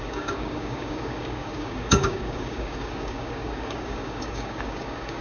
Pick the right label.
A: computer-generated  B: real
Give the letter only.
A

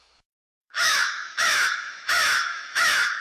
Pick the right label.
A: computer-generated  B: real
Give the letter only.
A